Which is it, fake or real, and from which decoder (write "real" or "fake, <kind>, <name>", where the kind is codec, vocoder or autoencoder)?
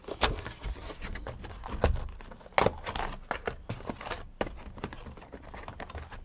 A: real